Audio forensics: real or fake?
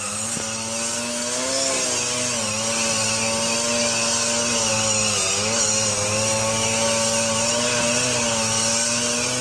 real